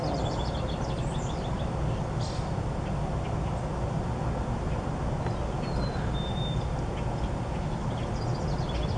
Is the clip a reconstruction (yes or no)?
no